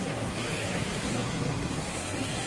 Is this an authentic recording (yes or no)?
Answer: no